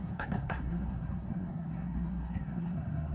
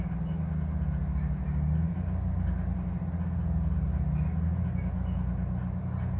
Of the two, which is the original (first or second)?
second